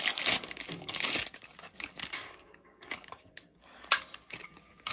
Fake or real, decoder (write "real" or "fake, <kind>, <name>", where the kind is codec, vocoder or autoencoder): fake, codec, DAC